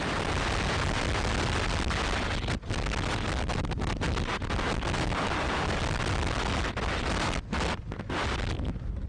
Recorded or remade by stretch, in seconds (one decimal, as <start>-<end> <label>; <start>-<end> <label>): 0.0-9.1 recorded